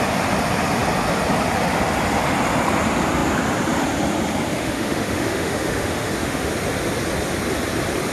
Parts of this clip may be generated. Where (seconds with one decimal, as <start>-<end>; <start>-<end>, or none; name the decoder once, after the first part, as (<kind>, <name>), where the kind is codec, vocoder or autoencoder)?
4.6-6.5 (autoencoder, DAC-VAE)